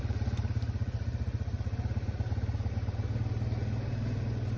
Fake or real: real